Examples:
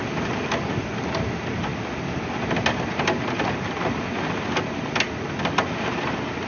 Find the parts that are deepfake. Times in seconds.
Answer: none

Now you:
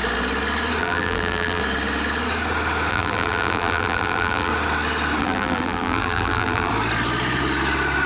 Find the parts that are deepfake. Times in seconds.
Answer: 0.8-1.6 (vocoder, BigVGAN v2); 2.9-4.5; 5.2-6.7

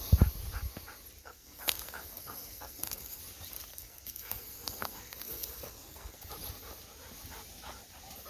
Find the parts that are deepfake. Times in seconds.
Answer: 1.2-3.2 (codec, SNAC); 3.7-6.3

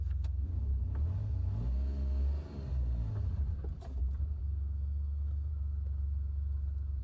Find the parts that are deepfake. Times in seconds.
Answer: 0.0-0.5 (codec, SNAC); 4.4-5.5

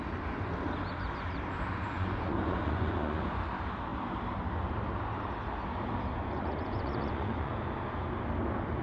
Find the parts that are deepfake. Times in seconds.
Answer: 1.9-3.3 (vocoder, Vocos); 6.2-7.5

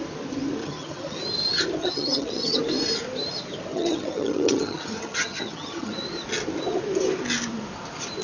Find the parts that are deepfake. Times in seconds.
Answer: 0.6-1.2 (vocoder, HiFi-GAN); 1.8-2.6; 3.7-5.9